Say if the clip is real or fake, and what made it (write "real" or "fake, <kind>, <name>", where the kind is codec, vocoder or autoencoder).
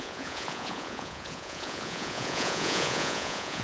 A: fake, vocoder, Vocos